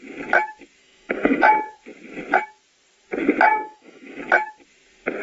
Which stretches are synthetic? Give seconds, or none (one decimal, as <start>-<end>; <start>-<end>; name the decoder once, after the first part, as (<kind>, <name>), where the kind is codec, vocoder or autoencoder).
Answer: 0.8-1.5 (autoencoder, DAC-VAE); 3.5-4.3